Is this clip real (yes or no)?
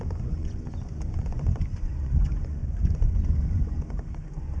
no